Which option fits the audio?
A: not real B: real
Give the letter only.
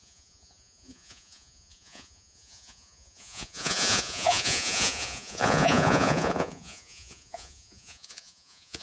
A